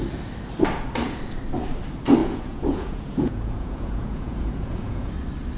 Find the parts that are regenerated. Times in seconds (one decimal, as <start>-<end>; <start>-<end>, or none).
2.2-5.1